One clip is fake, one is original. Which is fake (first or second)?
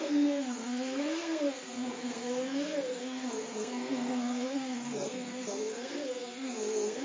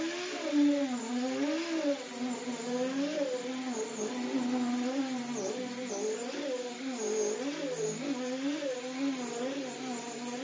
first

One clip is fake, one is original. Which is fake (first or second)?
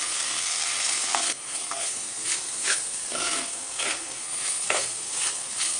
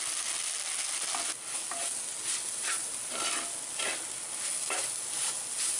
first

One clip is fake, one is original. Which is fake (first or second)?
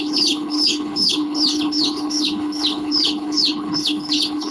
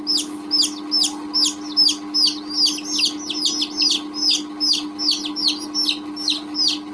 first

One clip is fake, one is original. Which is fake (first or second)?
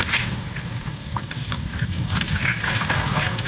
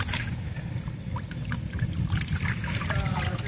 first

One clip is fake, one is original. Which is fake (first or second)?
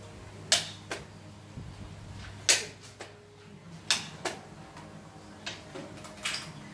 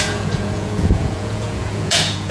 second